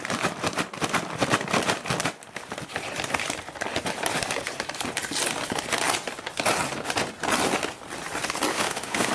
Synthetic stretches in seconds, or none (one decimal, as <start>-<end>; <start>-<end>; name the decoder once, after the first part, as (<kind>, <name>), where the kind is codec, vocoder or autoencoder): 8.5-9.1 (autoencoder, DAC-VAE)